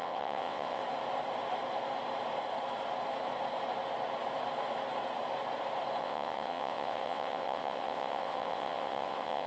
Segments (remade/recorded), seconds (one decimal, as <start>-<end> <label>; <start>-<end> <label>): 0.0-0.8 remade; 0.8-6.0 recorded; 6.0-9.5 remade